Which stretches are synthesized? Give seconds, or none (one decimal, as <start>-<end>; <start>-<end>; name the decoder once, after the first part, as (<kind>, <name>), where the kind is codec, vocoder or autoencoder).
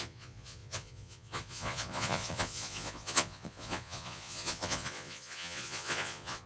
0.0-6.5 (vocoder, Vocos)